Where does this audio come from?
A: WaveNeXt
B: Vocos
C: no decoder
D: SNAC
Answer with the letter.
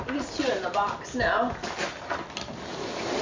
C